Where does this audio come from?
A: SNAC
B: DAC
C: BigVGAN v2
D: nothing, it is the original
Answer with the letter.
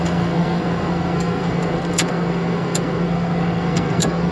A